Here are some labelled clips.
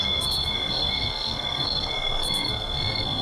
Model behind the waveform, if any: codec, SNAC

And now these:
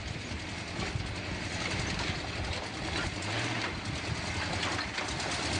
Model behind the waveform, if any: none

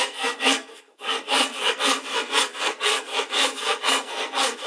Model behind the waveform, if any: codec, SNAC